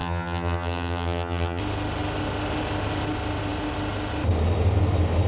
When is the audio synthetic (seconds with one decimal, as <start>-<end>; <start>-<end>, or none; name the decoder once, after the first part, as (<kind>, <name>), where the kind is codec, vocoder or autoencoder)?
0.0-1.6 (vocoder, HiFi-GAN)